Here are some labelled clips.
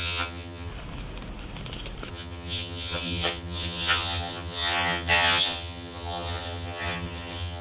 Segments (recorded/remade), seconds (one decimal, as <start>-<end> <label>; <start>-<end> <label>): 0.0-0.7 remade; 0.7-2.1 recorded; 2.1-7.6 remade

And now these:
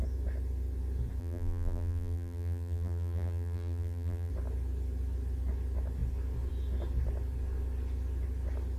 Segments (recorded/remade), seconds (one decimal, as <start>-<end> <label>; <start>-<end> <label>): 0.0-1.2 recorded; 1.2-4.3 remade; 4.3-8.8 recorded

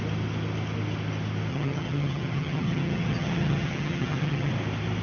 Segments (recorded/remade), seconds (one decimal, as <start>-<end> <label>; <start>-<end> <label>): 0.0-1.5 recorded; 1.5-4.5 remade; 4.5-5.0 recorded

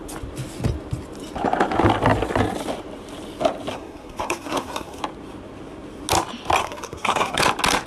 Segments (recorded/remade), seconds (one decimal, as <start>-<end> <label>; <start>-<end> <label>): 0.0-3.7 recorded; 3.7-5.0 remade; 5.0-6.6 recorded; 6.6-7.4 remade; 7.4-7.9 recorded